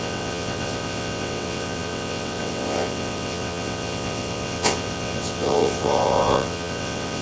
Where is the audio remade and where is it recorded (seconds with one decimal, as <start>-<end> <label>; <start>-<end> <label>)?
0.0-7.2 remade